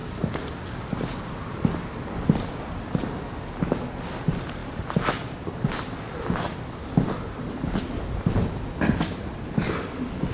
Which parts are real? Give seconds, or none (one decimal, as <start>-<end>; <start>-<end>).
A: 0.0-10.3